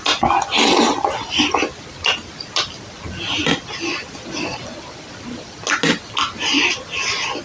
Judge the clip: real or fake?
real